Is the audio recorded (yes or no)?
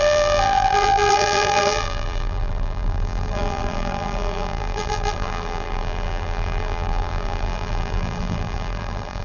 no